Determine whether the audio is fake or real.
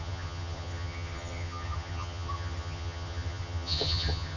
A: fake